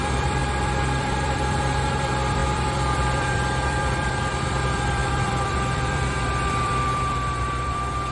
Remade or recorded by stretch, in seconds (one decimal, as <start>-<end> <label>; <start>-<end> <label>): 0.0-0.4 remade; 0.4-1.0 recorded; 1.0-8.1 remade